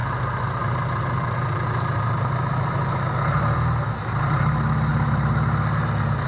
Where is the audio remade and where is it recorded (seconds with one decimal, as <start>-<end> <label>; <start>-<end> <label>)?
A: 0.0-3.1 remade; 3.1-4.9 recorded; 4.9-5.4 remade; 5.4-6.3 recorded